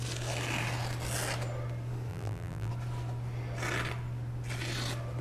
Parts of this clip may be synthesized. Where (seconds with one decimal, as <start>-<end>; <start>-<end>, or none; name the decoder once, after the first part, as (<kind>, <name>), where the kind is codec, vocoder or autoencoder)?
2.1-2.7 (vocoder, BigVGAN v2)